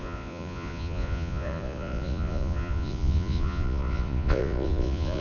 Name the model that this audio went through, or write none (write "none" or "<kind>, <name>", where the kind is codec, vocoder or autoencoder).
vocoder, Vocos